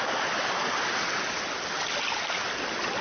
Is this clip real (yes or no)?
yes